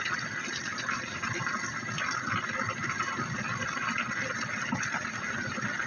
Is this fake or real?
real